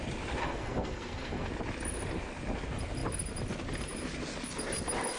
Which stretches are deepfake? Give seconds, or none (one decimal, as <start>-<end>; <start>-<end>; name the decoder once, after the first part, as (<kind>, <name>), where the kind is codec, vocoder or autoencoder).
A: 0.4-1.5 (codec, SNAC)